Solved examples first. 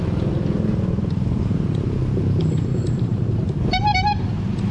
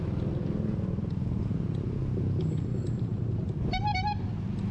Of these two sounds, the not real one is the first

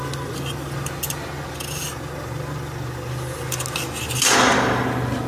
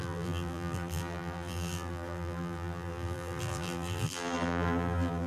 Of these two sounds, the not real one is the second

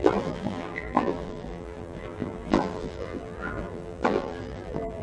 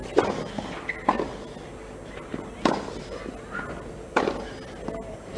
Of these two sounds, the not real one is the first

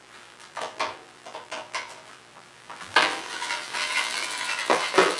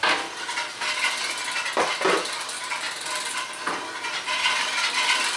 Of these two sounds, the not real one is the first